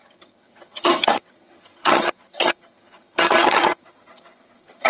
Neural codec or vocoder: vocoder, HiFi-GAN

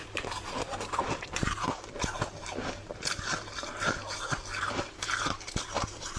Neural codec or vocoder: vocoder, BigVGAN v2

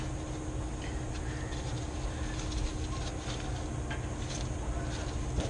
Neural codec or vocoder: none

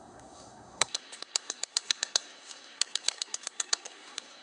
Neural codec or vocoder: codec, SNAC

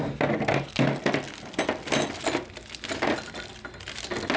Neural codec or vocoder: none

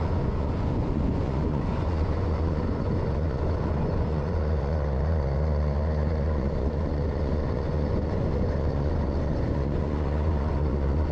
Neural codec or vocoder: vocoder, Vocos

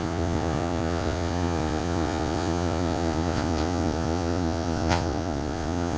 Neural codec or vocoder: vocoder, Vocos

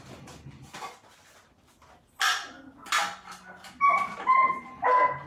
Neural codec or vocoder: none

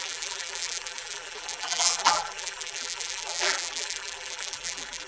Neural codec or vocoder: vocoder, BigVGAN v2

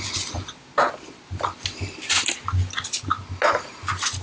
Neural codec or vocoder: none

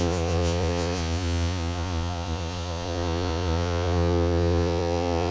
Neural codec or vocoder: vocoder, Vocos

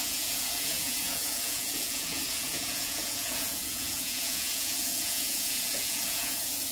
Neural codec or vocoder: vocoder, Vocos